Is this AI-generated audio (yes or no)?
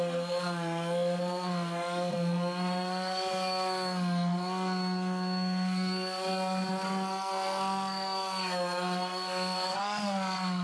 yes